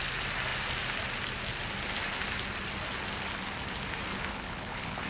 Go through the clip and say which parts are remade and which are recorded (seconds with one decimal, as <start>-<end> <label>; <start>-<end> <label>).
0.0-4.1 recorded; 4.1-5.1 remade